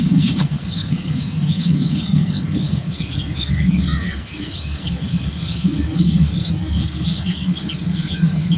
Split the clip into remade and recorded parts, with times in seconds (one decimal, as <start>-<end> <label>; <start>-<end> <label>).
0.0-8.6 remade